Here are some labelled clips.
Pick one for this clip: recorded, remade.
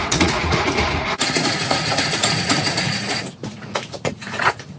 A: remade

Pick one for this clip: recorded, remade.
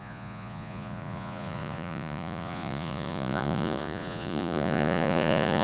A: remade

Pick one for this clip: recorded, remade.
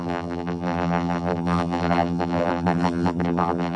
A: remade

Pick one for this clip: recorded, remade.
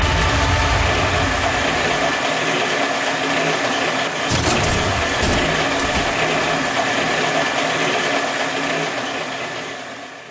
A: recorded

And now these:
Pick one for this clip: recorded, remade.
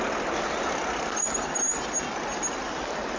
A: recorded